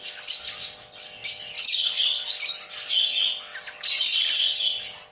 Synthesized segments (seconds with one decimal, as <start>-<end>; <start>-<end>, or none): none